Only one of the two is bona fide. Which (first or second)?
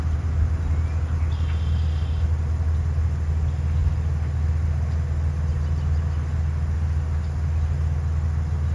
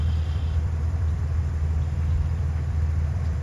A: first